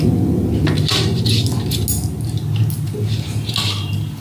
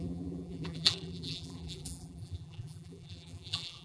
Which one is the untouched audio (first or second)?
first